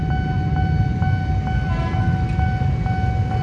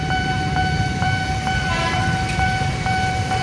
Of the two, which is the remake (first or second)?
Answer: second